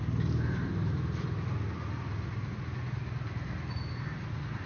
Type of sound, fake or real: real